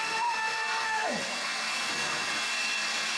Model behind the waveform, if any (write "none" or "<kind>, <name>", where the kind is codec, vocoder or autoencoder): codec, SNAC